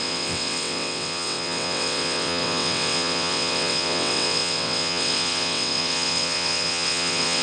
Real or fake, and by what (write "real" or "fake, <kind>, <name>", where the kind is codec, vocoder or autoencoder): fake, vocoder, WaveNeXt